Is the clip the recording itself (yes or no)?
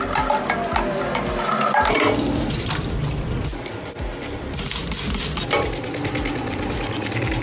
yes